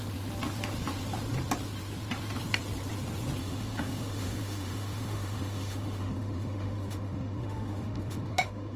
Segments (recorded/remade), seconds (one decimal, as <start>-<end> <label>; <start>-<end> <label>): 0.0-3.4 recorded; 3.4-8.8 remade